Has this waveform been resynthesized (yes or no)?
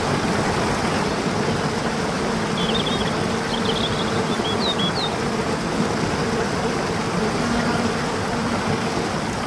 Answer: no